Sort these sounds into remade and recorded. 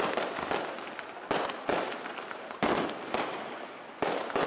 recorded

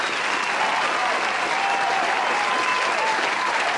recorded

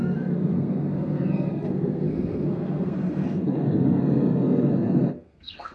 remade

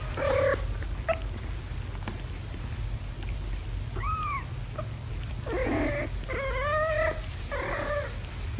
recorded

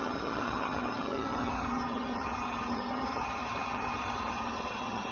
remade